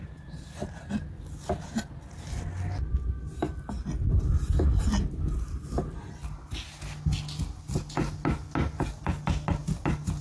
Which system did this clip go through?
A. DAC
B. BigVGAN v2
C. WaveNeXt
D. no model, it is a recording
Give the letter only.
D